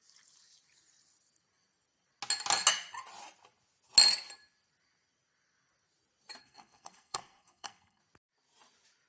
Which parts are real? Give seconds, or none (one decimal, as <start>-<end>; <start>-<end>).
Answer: 0.0-6.4; 8.0-9.1